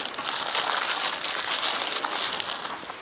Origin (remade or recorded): recorded